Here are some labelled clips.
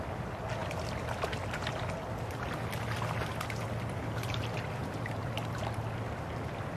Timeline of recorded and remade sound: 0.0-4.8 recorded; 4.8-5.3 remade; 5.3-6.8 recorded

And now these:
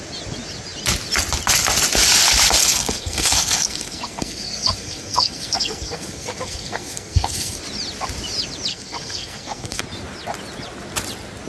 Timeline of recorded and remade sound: 0.0-2.6 recorded; 2.6-7.6 remade; 7.6-8.7 recorded; 8.7-9.8 remade; 9.8-11.5 recorded